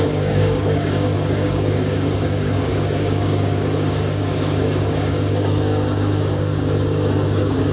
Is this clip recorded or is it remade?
remade